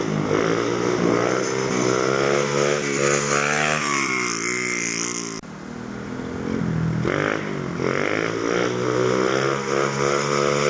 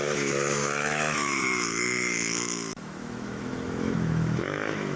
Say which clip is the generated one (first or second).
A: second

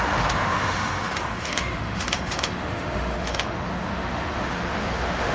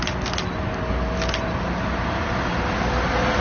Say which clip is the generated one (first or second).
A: first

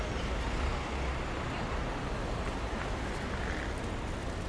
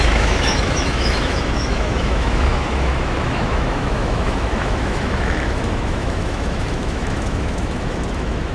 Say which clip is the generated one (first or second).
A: second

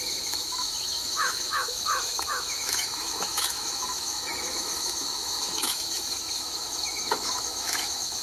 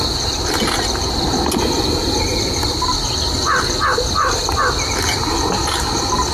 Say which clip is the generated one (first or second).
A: first